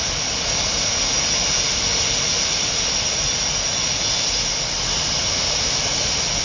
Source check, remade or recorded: recorded